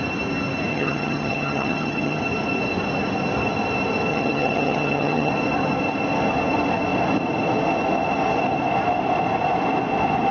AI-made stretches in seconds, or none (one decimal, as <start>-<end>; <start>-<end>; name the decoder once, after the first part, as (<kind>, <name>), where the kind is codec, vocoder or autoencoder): 0.7-2.2 (vocoder, HiFi-GAN); 4.1-5.3